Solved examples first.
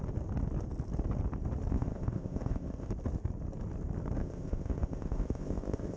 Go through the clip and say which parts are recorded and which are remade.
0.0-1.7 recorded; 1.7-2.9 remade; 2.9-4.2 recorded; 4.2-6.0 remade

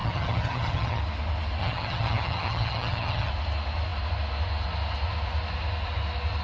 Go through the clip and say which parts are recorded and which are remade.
0.0-1.0 remade; 1.0-1.6 recorded; 1.6-3.3 remade; 3.3-6.4 recorded

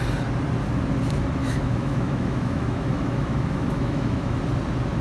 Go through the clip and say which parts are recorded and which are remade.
0.0-1.4 recorded; 1.4-4.4 remade; 4.4-5.0 recorded

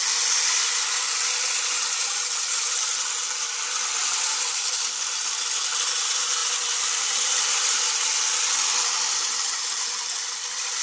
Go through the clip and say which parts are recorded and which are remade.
0.0-10.8 recorded

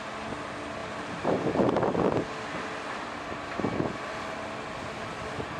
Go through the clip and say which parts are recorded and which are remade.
0.0-0.8 recorded; 0.8-1.5 remade; 1.5-5.6 recorded